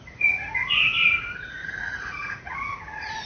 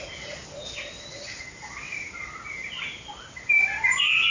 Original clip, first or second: second